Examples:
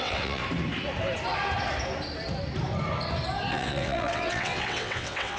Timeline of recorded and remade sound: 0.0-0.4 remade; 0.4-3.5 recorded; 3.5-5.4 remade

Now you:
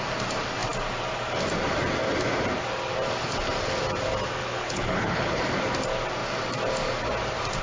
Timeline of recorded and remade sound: 0.0-4.4 recorded; 4.4-5.4 remade; 5.4-7.6 recorded

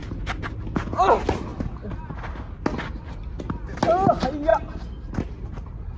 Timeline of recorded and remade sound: 0.0-0.6 remade; 0.6-6.0 recorded

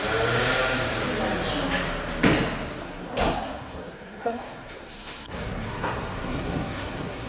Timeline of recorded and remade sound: 0.0-2.8 recorded; 2.8-7.3 remade

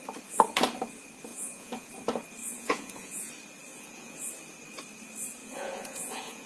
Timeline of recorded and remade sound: 0.0-1.3 recorded; 1.3-1.9 remade; 1.9-2.4 recorded; 2.4-3.3 remade; 3.3-3.7 recorded; 3.7-4.3 remade; 4.3-5.4 recorded; 5.4-6.5 remade

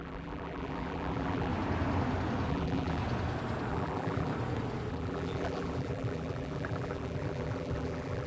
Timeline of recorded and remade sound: 0.0-1.5 remade; 1.5-2.5 recorded; 2.5-3.0 remade; 3.0-3.7 recorded; 3.7-4.3 remade; 4.3-4.9 recorded; 4.9-8.3 remade

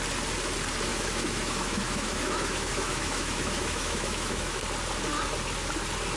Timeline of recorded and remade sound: 0.0-0.9 recorded; 0.9-4.6 remade; 4.6-6.2 recorded